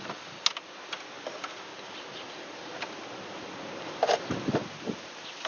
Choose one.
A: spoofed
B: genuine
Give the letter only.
B